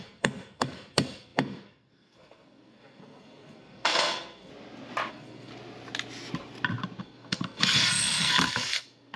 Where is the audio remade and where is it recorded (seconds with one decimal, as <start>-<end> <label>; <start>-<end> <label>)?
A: 0.0-4.5 remade; 4.5-5.1 recorded; 5.1-5.5 remade; 5.5-7.0 recorded; 7.0-9.2 remade

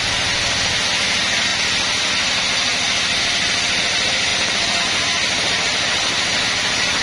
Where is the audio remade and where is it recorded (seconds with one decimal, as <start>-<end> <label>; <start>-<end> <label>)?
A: 0.0-7.0 recorded

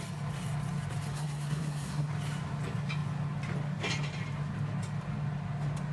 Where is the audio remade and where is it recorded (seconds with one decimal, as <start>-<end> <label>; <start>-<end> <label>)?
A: 0.0-1.1 recorded; 1.1-2.1 remade; 2.1-5.9 recorded

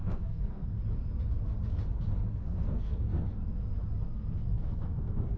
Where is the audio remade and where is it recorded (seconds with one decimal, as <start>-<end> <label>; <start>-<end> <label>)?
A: 0.0-0.8 remade; 0.8-2.4 recorded; 2.4-3.3 remade; 3.3-4.4 recorded; 4.4-5.4 remade

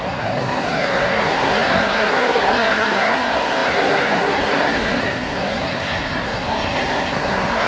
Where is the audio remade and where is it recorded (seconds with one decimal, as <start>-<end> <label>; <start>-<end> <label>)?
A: 0.0-7.7 remade

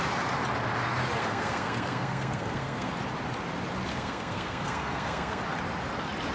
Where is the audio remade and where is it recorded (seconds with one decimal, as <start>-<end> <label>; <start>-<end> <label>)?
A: 0.0-1.2 recorded; 1.2-2.9 remade; 2.9-3.9 recorded; 3.9-5.4 remade; 5.4-6.3 recorded

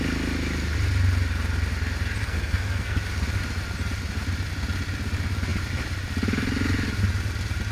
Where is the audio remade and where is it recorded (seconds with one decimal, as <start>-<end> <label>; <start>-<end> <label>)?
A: 0.0-2.2 recorded; 2.2-3.0 remade; 3.0-7.7 recorded